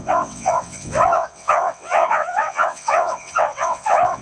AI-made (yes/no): yes